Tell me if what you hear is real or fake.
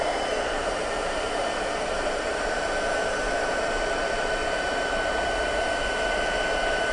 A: fake